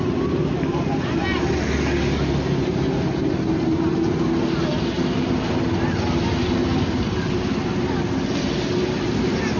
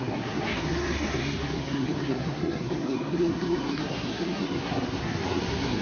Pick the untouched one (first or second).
first